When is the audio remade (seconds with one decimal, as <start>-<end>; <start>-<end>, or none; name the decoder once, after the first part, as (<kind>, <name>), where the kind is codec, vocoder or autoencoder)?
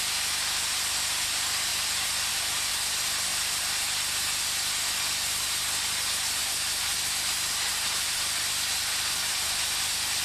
1.7-2.3 (vocoder, BigVGAN v2)